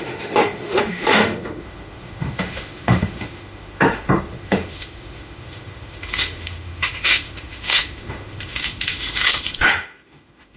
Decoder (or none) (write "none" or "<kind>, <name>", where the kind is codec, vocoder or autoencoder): autoencoder, DAC-VAE